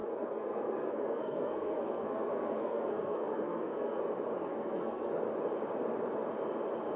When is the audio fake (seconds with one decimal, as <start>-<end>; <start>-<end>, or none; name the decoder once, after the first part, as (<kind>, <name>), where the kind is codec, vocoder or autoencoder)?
0.0-4.0 (codec, SNAC); 4.5-5.2